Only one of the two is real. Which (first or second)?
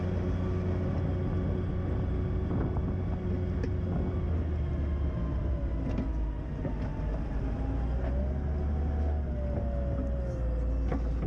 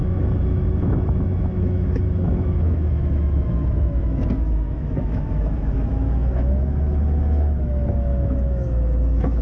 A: first